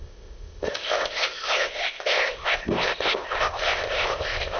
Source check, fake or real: fake